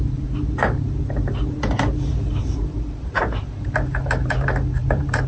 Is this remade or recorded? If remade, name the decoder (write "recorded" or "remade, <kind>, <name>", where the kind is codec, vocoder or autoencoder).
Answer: remade, vocoder, BigVGAN v2